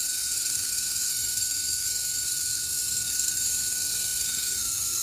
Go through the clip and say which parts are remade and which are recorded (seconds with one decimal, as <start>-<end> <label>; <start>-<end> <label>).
0.0-5.0 remade